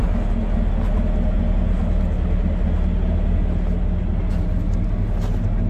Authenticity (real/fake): real